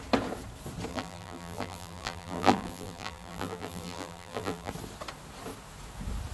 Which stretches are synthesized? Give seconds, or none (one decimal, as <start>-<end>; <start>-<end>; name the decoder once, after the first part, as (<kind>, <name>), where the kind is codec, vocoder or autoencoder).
0.9-4.7 (vocoder, BigVGAN v2)